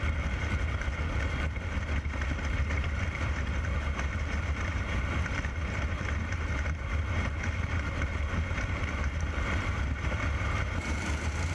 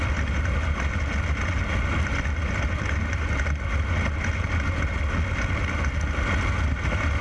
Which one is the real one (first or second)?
second